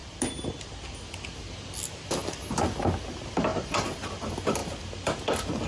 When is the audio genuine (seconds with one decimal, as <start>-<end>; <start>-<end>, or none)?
0.0-3.5; 4.1-5.7

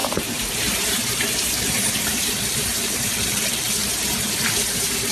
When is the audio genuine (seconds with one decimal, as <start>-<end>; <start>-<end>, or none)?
3.1-3.8